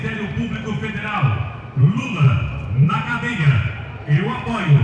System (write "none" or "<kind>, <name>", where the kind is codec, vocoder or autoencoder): vocoder, BigVGAN v2